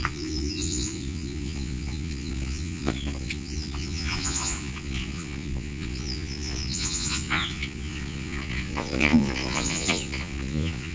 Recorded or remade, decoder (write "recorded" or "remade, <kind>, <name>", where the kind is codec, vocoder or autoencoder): remade, vocoder, Vocos